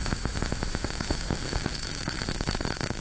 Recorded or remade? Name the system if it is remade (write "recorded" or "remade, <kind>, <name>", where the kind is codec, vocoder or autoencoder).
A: remade, autoencoder, DAC-VAE